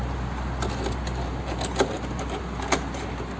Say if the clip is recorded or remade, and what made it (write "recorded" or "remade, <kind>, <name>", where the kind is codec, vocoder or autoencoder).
recorded